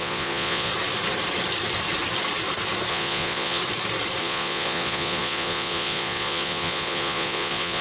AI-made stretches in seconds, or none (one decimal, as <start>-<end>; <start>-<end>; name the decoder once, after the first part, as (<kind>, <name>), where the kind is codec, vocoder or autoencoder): 0.0-0.7 (vocoder, Vocos); 2.9-3.6; 4.2-7.8